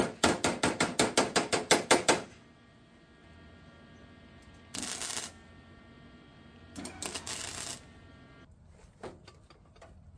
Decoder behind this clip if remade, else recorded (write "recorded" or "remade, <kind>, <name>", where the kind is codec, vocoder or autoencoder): recorded